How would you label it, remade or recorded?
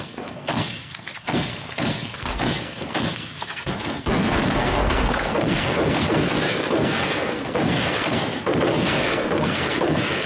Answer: remade